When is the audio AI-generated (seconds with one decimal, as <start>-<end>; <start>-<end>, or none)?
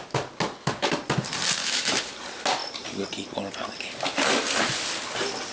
1.6-2.1